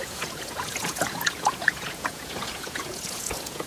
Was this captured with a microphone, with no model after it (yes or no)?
no